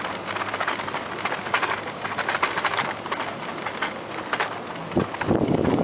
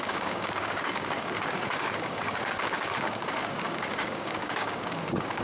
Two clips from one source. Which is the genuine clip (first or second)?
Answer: first